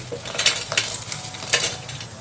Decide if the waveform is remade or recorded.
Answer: recorded